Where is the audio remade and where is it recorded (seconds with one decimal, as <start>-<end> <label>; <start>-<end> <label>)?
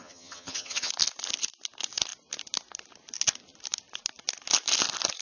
0.0-0.9 remade; 0.9-5.2 recorded